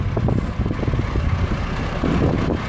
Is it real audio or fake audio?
real